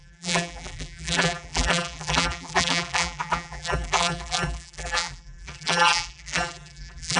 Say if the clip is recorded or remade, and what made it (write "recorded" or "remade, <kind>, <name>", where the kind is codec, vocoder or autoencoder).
remade, vocoder, BigVGAN v2